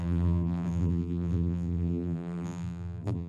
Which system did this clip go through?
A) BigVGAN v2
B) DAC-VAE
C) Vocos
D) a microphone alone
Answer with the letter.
A